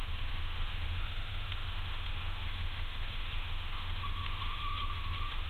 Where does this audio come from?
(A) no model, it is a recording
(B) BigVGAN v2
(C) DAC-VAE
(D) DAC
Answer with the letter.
C